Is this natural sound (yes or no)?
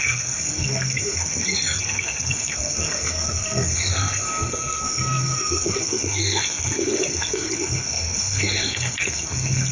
no